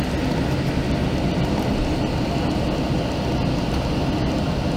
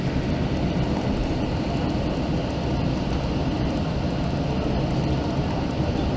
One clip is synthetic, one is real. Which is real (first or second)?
first